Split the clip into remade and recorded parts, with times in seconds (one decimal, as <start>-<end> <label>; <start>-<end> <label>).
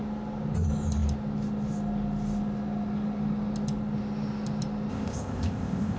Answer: 0.0-4.9 recorded; 4.9-6.0 remade